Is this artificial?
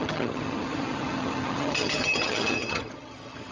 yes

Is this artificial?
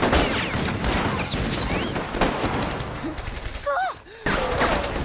no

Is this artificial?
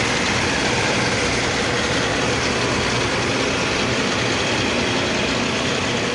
no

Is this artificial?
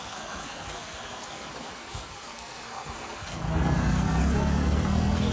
yes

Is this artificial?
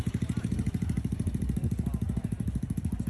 no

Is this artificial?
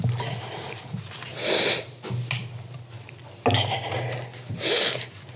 no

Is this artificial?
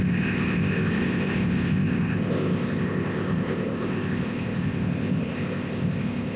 yes